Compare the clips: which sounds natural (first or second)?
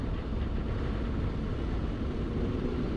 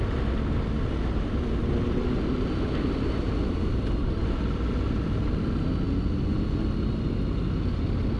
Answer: second